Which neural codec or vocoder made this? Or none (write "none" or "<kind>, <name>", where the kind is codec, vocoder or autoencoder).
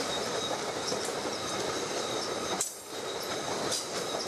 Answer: none